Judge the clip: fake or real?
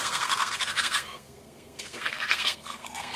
fake